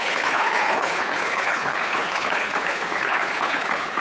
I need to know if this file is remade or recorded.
remade